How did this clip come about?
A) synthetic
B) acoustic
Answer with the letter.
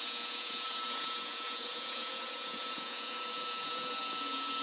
A